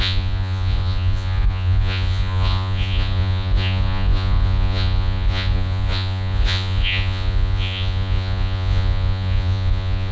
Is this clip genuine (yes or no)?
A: no